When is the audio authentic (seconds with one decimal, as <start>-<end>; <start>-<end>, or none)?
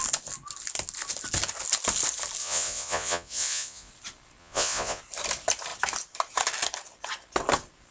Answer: 0.0-2.4; 3.9-4.4; 5.0-7.9